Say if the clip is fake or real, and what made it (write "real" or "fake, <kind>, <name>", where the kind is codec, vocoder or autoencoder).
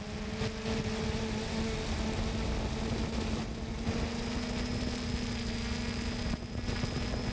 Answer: real